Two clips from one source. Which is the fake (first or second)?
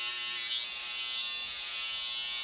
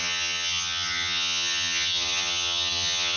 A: second